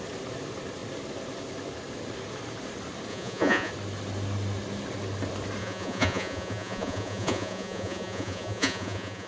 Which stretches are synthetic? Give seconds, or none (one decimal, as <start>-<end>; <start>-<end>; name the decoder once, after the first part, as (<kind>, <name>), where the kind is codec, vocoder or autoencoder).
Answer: 3.1-3.7 (vocoder, Vocos); 5.6-9.3